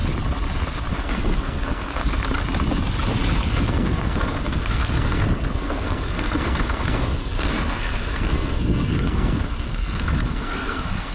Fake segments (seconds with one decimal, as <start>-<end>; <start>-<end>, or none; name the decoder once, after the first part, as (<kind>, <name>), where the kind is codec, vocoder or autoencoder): 0.9-2.0 (codec, SNAC); 3.5-11.1